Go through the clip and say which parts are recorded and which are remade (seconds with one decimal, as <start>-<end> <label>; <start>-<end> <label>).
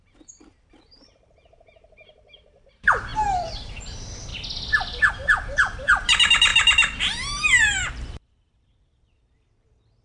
0.0-4.3 remade; 4.3-5.1 recorded; 5.1-10.0 remade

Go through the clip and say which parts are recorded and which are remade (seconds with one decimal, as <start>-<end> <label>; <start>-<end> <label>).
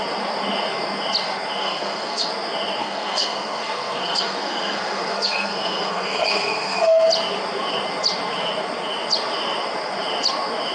0.0-1.6 recorded; 1.6-2.3 remade; 2.3-2.8 recorded; 2.8-7.1 remade; 7.1-10.7 recorded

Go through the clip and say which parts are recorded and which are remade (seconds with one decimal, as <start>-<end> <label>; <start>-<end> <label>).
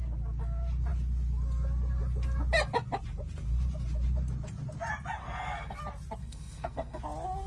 0.0-5.2 recorded; 5.2-5.8 remade; 5.8-6.2 recorded; 6.2-7.0 remade; 7.0-7.5 recorded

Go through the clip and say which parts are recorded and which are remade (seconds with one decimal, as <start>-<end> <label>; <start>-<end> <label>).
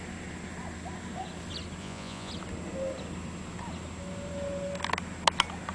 0.0-1.8 recorded; 1.8-2.3 remade; 2.3-5.7 recorded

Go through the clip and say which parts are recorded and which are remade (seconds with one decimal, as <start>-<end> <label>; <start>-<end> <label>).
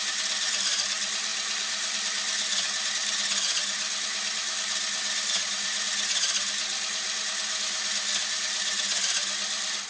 0.0-9.9 recorded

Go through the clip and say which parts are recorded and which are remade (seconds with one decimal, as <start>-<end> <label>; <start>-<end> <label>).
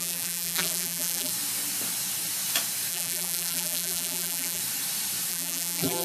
0.0-1.3 remade; 1.3-2.9 recorded; 2.9-4.6 remade; 4.6-5.3 recorded; 5.3-6.0 remade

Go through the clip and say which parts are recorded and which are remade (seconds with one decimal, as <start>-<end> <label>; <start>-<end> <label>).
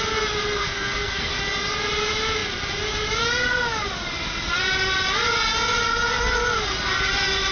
0.0-0.6 recorded; 0.6-1.4 remade; 1.4-7.5 recorded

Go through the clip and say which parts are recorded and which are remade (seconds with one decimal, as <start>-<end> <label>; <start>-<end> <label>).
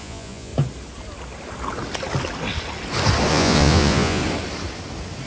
0.0-0.5 remade; 0.5-3.3 recorded; 3.3-4.2 remade; 4.2-5.3 recorded